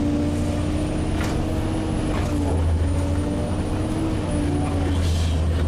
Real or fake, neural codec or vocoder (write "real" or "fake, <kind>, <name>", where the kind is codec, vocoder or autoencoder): real